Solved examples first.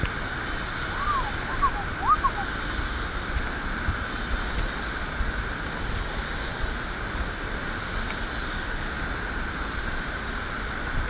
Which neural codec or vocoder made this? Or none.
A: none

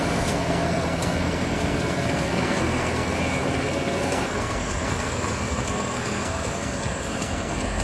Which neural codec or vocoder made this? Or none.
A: codec, SNAC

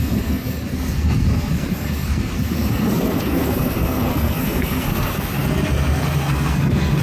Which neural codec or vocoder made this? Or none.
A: codec, SNAC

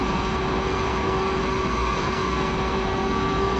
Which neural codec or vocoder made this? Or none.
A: codec, SNAC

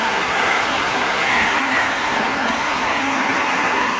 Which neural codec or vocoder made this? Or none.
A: codec, SNAC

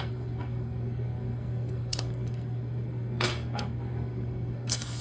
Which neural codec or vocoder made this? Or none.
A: codec, SNAC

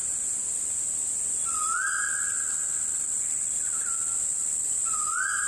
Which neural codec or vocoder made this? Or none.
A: none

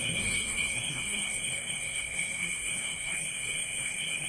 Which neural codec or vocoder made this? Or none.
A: codec, SNAC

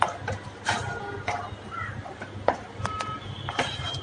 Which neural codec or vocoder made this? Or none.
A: none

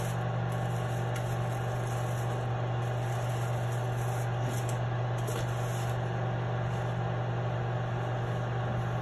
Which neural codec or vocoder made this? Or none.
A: none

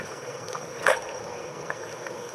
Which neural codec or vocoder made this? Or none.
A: codec, SNAC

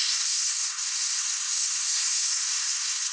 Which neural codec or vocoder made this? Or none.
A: codec, SNAC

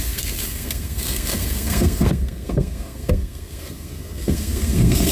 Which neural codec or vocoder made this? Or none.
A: codec, SNAC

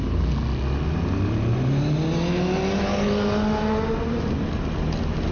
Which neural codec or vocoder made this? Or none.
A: none